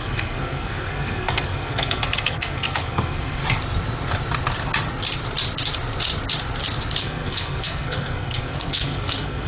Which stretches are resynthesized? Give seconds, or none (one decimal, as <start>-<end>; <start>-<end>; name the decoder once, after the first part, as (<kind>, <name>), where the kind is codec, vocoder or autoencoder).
0.0-3.4 (codec, SNAC); 7.0-9.5